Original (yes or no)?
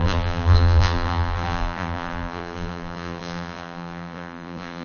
no